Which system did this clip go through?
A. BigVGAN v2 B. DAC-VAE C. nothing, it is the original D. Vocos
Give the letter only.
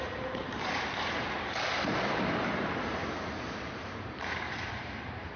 A